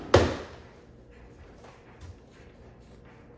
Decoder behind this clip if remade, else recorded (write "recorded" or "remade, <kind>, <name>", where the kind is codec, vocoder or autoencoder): recorded